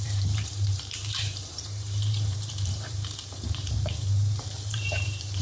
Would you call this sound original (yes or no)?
no